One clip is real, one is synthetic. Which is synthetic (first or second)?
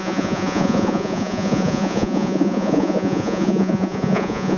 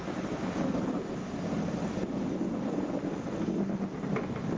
first